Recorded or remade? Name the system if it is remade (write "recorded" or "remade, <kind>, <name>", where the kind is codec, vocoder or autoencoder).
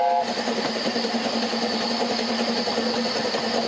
recorded